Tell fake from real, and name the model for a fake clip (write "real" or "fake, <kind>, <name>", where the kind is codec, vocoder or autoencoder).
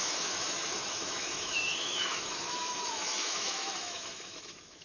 fake, autoencoder, DAC-VAE